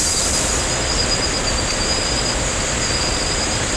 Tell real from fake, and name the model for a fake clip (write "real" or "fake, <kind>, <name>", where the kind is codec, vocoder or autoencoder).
real